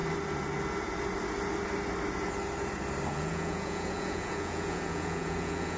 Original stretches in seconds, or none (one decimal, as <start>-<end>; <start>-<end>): 0.0-3.1